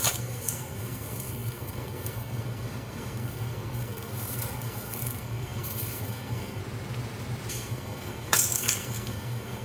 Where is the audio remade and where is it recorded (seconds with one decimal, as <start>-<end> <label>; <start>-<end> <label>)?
0.0-6.6 remade; 6.6-7.5 recorded; 7.5-9.6 remade